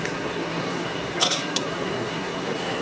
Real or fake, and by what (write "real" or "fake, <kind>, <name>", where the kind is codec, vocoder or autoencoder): fake, codec, SNAC